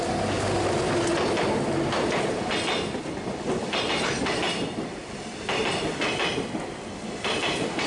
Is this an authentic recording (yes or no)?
yes